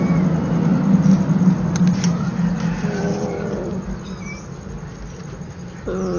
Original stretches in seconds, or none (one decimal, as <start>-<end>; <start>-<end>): 0.0-6.2